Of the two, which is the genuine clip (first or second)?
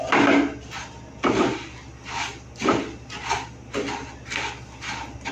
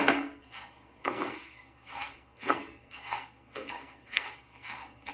first